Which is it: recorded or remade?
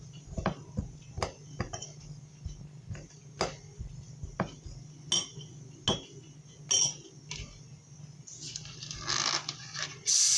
recorded